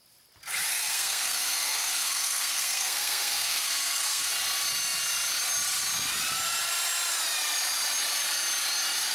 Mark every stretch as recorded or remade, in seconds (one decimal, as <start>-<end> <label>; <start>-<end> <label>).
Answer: 0.0-0.7 recorded; 0.7-4.3 remade; 4.3-9.1 recorded